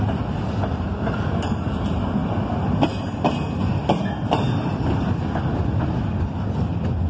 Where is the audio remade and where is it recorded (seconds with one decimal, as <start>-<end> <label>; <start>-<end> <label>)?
0.0-7.1 recorded